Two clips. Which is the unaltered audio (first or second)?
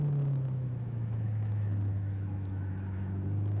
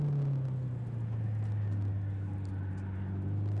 second